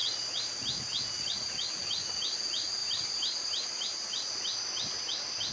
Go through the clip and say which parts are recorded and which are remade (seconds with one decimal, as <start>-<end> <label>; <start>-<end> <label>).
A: 0.0-0.8 remade; 0.8-2.8 recorded; 2.8-3.7 remade; 3.7-5.5 recorded